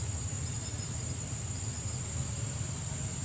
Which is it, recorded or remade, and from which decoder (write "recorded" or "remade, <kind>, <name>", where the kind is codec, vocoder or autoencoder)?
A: recorded